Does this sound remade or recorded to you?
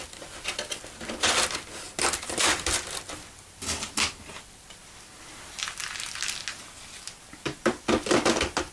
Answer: recorded